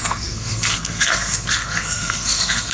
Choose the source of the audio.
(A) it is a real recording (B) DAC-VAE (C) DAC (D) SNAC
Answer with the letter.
D